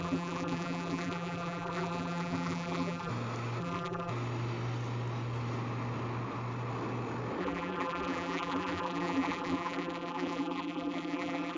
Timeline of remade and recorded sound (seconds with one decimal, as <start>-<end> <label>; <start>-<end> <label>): 0.0-3.1 remade; 3.1-3.6 recorded; 3.6-4.1 remade; 4.1-7.4 recorded; 7.4-11.6 remade